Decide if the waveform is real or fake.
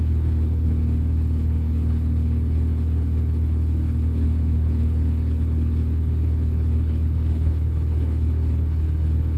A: fake